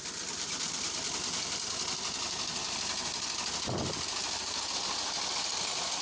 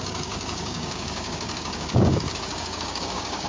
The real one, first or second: first